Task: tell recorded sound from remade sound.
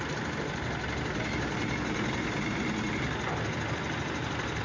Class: recorded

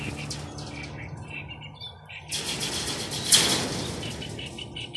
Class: recorded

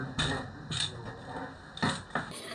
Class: recorded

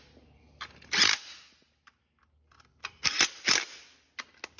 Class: recorded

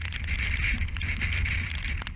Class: recorded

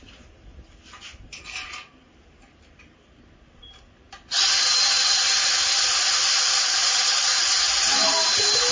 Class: remade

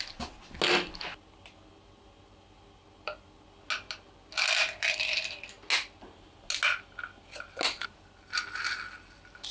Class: recorded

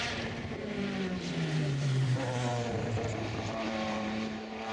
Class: remade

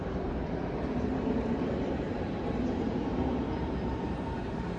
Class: remade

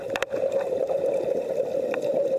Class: recorded